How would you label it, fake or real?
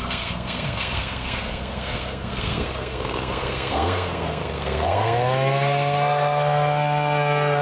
fake